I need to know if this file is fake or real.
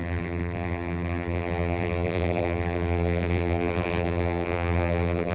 fake